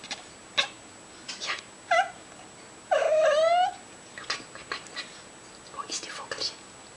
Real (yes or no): yes